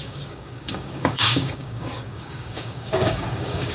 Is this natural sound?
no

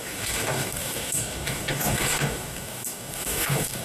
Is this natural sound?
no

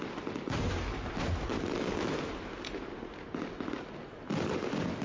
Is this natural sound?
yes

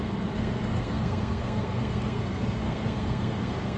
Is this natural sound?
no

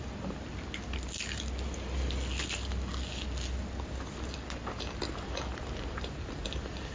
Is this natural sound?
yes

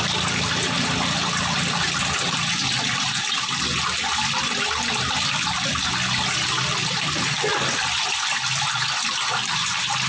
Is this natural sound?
yes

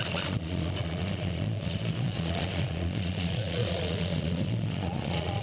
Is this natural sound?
no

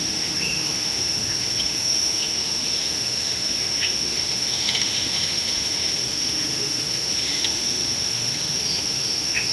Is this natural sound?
no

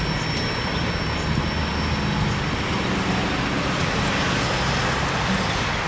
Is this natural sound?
yes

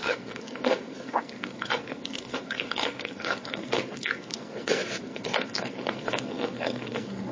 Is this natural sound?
no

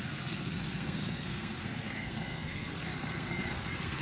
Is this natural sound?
no